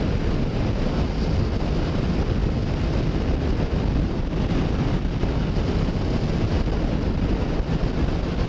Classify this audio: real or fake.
real